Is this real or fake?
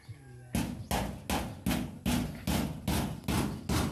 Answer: real